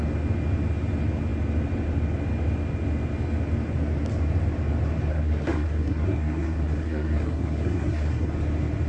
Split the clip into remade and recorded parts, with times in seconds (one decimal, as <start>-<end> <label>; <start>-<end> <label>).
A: 0.0-5.1 recorded; 5.1-8.3 remade; 8.3-8.9 recorded